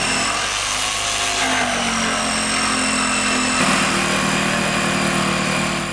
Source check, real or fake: real